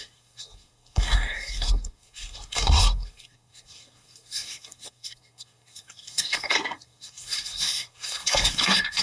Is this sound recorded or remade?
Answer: remade